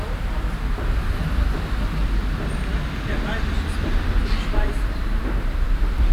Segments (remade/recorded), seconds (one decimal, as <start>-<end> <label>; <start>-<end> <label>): 0.0-2.2 remade; 2.2-4.4 recorded; 4.4-6.1 remade